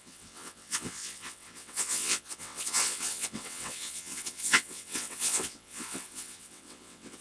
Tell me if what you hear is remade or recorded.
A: remade